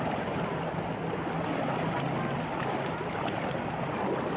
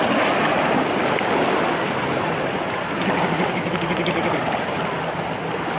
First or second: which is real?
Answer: second